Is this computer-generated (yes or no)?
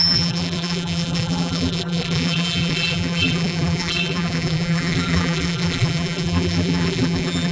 yes